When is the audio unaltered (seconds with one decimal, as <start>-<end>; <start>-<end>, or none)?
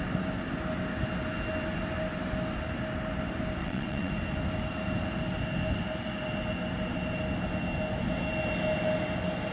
0.0-3.6; 4.1-9.5